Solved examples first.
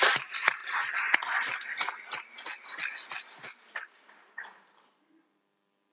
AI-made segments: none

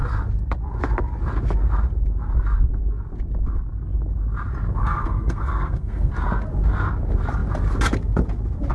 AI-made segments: 4.8-6.1 (codec, SNAC)

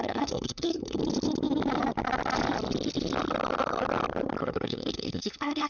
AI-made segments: 0.0-1.0 (codec, SNAC); 4.4-5.7

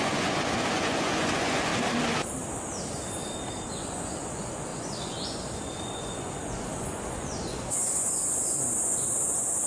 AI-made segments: 0.0-1.7 (vocoder, Vocos); 3.7-9.7

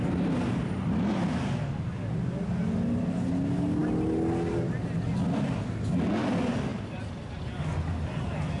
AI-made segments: none

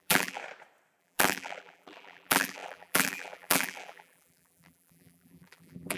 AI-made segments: 0.0-0.4 (vocoder, BigVGAN v2); 1.0-6.0

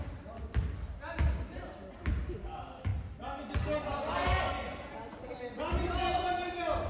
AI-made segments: none

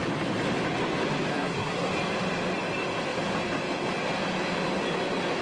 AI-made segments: 1.3-1.9 (codec, SNAC)